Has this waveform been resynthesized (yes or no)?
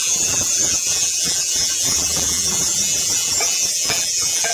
yes